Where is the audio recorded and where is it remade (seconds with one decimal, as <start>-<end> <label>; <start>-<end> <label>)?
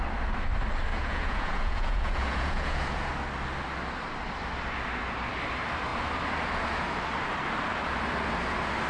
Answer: 0.0-0.9 recorded; 0.9-3.1 remade; 3.1-8.9 recorded